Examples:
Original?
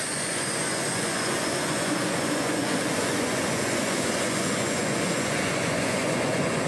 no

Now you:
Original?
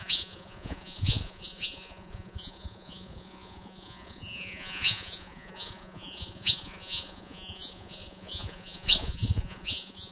no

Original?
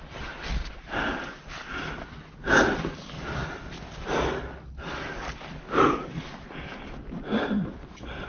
yes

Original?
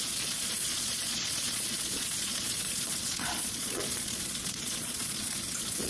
no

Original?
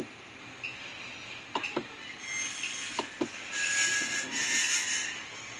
yes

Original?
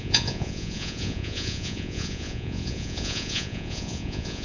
no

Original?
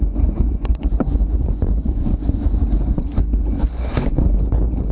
no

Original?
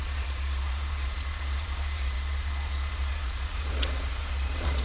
no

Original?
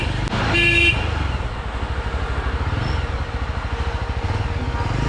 yes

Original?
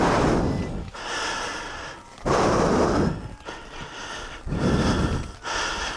yes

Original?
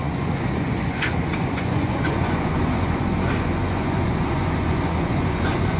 no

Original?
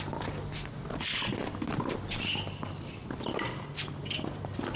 yes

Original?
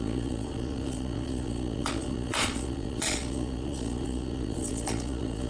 no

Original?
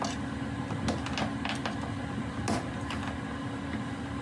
yes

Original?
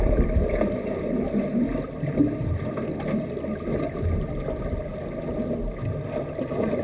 yes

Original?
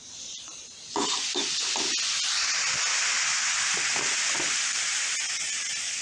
yes